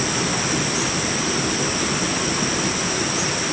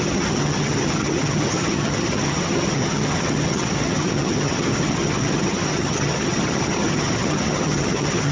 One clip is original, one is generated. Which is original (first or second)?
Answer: first